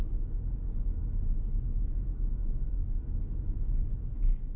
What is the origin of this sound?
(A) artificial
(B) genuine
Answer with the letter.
B